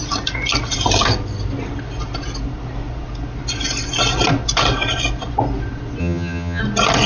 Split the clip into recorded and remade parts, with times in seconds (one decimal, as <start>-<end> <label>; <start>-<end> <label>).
0.0-6.0 recorded; 6.0-6.6 remade; 6.6-7.1 recorded